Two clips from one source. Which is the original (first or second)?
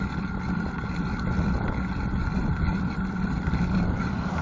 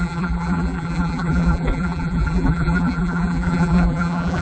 first